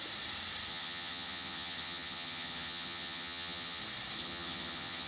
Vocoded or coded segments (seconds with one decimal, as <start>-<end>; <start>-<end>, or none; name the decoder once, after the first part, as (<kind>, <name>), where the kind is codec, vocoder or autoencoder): 0.7-3.8 (vocoder, HiFi-GAN); 4.2-5.1